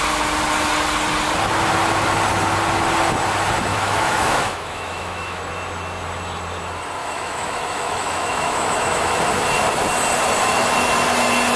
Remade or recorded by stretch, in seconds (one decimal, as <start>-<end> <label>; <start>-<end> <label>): 0.0-3.7 recorded; 3.7-5.4 remade; 5.4-7.0 recorded; 7.0-9.2 remade; 9.2-11.6 recorded